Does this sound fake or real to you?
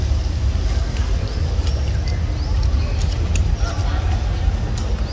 real